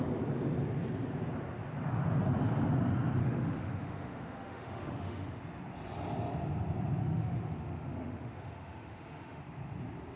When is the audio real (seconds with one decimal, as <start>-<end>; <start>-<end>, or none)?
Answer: 0.0-3.2; 5.4-7.0; 9.4-10.2